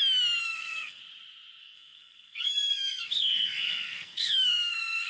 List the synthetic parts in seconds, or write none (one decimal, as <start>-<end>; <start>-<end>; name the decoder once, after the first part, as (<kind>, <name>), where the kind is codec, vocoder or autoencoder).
0.4-1.0 (codec, SNAC); 1.6-5.1